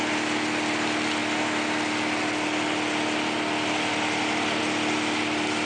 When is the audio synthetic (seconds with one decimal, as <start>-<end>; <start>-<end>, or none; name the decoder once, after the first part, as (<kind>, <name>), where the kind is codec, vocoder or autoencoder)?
none